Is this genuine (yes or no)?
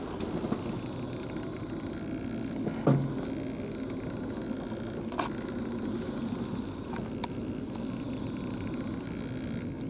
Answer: yes